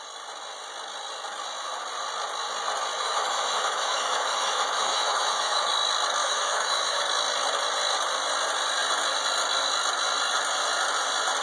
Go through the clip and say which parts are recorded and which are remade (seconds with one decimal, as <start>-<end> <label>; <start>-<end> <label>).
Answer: 0.0-3.0 recorded; 3.0-5.7 remade; 5.7-6.2 recorded; 6.2-7.0 remade; 7.0-11.4 recorded